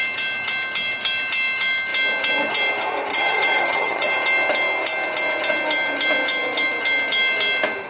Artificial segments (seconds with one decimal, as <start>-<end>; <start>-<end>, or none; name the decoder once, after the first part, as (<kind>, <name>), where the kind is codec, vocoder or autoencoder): 3.1-4.1 (vocoder, HiFi-GAN)